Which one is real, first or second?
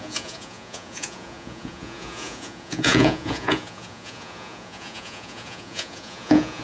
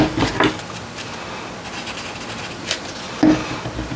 second